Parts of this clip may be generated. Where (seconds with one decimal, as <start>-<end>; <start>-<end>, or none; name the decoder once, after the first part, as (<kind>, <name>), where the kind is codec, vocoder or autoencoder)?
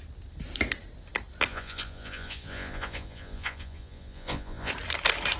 1.5-4.7 (vocoder, Vocos)